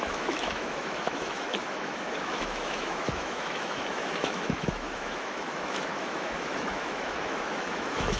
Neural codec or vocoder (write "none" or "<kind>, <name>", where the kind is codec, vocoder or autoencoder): autoencoder, DAC-VAE